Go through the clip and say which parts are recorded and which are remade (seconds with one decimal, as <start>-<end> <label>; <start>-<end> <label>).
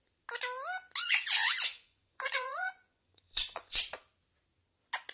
0.0-1.0 recorded; 1.0-3.8 remade; 3.8-5.1 recorded